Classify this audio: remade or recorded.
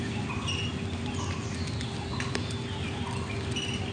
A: recorded